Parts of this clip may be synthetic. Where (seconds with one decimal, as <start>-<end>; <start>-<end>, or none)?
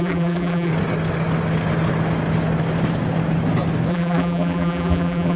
0.0-0.7; 3.9-5.4